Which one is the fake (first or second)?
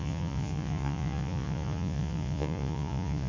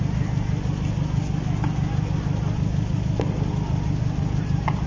first